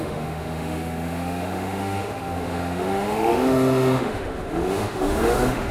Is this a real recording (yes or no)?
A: no